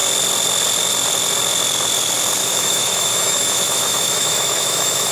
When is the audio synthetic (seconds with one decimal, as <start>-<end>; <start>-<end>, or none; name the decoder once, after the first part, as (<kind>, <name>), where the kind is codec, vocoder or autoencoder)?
2.4-5.1 (autoencoder, DAC-VAE)